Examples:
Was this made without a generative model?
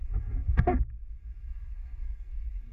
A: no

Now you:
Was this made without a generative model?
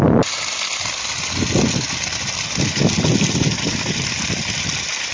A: yes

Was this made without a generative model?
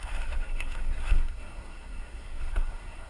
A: no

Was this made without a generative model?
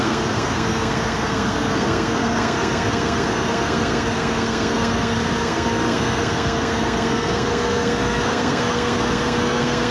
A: no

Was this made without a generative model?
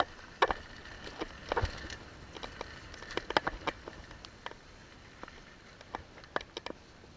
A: yes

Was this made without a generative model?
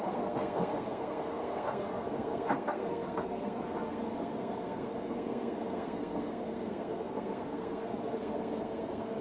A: no